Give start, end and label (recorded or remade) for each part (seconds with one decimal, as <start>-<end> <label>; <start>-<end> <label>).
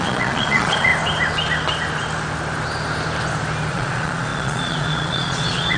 0.0-0.9 remade; 0.9-3.7 recorded; 3.7-5.8 remade